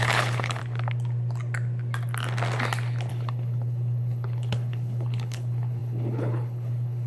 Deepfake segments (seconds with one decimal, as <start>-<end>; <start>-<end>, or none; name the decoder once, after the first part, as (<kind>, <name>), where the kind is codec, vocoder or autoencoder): 0.0-0.6 (codec, HILCodec); 3.1-7.1